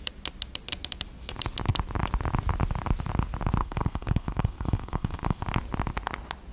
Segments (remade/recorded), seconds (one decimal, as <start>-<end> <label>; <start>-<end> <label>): 0.0-3.6 recorded; 3.6-5.4 remade; 5.4-6.5 recorded